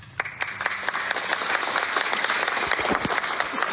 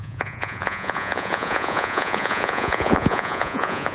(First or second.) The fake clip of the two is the second